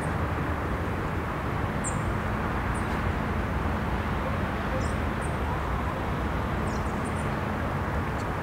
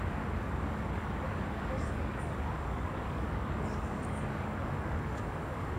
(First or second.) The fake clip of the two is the second